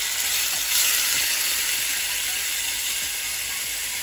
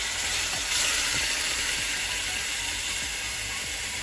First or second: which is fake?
second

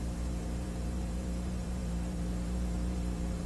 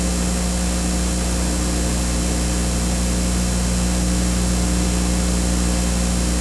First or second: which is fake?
first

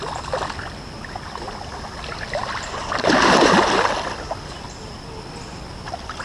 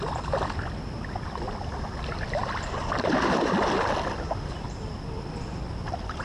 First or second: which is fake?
second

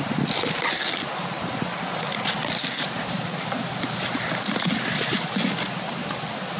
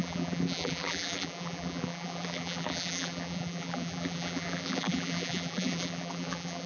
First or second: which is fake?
second